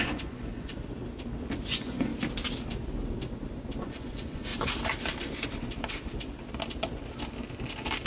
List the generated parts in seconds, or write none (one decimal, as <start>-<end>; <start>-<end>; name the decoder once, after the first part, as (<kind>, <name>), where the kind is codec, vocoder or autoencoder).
0.0-0.7 (vocoder, Vocos); 1.7-2.1; 3.8-4.5

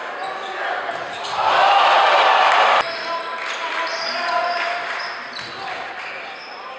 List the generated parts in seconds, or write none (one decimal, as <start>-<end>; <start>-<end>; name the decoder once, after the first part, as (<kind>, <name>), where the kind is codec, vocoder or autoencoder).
none